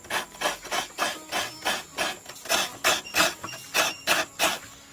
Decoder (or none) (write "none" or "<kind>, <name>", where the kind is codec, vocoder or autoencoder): none